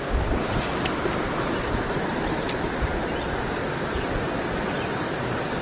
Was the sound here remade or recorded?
recorded